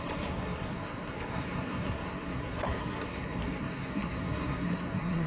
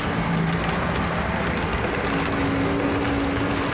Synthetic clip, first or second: first